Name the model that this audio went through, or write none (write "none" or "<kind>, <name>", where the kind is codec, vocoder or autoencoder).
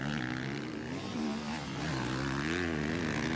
none